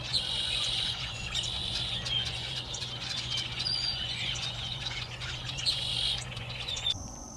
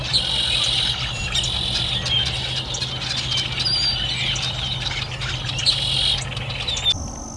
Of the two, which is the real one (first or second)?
second